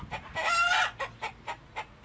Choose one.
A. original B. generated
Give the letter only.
A